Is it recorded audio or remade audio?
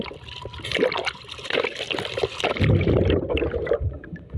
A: recorded